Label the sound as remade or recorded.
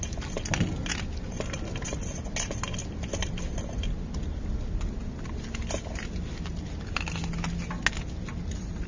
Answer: recorded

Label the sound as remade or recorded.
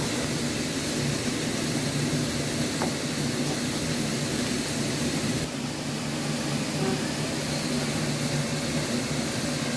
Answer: recorded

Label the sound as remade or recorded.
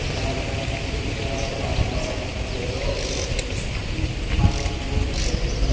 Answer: recorded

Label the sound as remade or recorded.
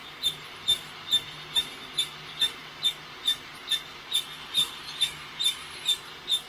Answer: recorded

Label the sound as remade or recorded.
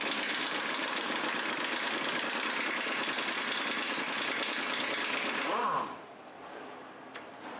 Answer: remade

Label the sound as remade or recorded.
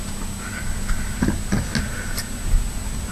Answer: recorded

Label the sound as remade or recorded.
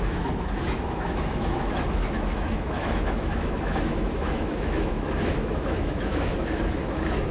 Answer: remade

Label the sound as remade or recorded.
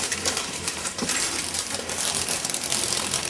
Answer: remade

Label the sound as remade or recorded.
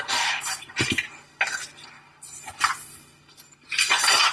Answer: recorded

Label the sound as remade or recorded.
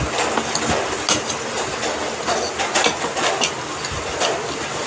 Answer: recorded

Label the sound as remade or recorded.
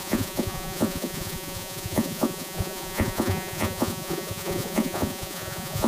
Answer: remade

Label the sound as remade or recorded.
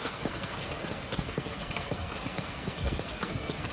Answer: remade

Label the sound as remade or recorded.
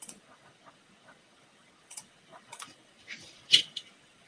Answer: remade